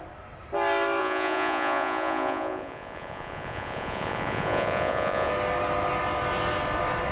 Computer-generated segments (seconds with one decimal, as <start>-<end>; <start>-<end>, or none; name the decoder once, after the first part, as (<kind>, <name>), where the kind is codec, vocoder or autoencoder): 1.0-5.3 (vocoder, Vocos)